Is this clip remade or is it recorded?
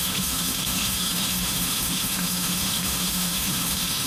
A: remade